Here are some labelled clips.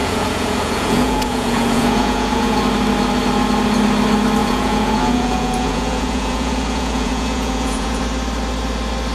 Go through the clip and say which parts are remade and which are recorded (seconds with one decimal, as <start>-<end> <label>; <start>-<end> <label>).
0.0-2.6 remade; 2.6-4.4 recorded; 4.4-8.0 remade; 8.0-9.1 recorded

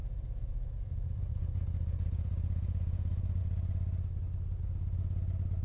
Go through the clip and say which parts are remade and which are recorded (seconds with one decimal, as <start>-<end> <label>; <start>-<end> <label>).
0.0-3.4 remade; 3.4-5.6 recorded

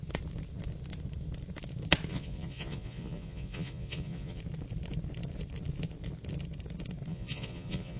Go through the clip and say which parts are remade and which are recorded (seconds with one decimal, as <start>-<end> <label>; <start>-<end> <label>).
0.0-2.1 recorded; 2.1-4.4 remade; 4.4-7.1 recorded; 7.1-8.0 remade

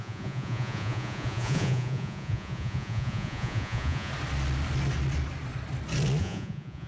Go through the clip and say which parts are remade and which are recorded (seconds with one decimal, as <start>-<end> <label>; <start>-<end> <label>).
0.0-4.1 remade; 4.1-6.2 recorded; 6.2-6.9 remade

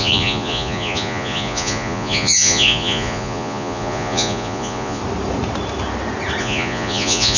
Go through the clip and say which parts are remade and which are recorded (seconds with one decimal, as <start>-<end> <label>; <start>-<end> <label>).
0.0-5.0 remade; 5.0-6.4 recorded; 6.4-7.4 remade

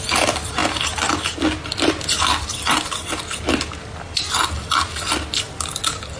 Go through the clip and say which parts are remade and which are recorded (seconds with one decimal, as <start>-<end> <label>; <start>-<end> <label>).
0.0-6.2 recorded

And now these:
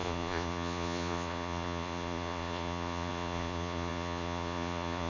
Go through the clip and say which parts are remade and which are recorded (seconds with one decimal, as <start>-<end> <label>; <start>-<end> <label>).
0.0-5.1 remade

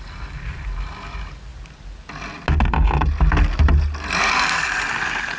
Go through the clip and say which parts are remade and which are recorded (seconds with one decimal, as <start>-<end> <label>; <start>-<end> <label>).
0.0-5.4 recorded